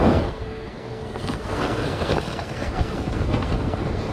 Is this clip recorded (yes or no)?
no